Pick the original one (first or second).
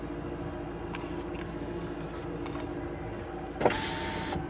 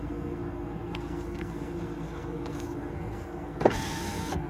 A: first